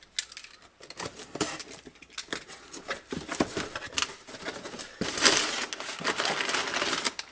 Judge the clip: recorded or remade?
recorded